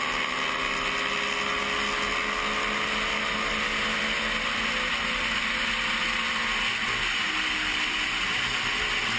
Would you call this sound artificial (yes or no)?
no